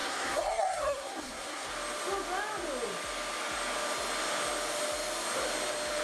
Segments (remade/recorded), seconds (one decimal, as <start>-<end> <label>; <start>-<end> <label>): 0.0-1.7 remade; 1.7-6.0 recorded